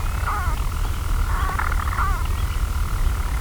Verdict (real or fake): real